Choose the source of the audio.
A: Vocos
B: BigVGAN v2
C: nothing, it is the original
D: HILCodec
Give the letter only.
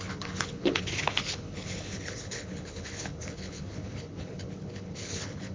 D